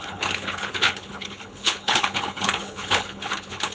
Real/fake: fake